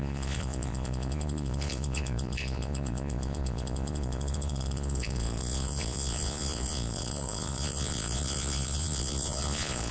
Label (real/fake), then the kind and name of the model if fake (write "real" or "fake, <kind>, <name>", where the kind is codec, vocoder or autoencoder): fake, vocoder, Vocos